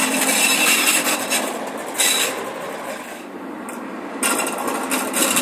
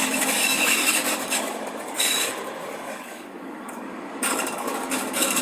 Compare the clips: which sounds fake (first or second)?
second